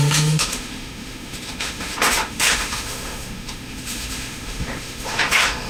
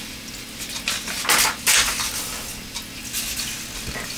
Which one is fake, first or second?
first